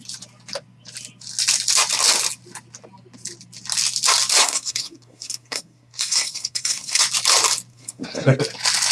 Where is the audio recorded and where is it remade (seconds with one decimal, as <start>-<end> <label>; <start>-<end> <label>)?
0.0-4.4 recorded; 4.4-7.0 remade; 7.0-7.7 recorded; 7.7-8.4 remade; 8.4-8.9 recorded